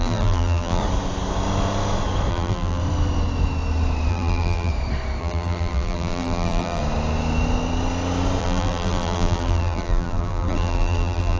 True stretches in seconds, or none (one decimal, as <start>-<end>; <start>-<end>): 0.8-2.3; 2.8-4.1; 4.7-5.2; 6.8-8.4